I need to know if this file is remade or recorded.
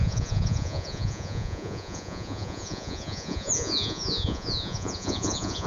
remade